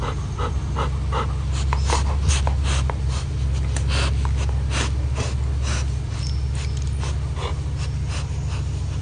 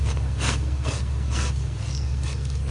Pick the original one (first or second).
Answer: first